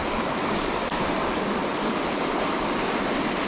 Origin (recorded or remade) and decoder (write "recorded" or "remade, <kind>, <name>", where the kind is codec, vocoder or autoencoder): recorded